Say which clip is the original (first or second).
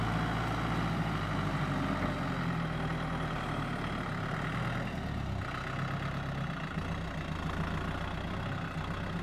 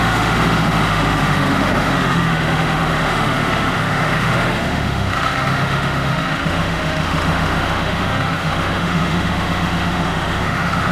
first